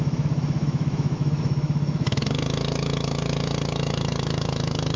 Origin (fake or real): fake